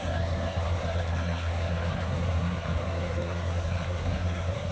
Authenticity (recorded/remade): remade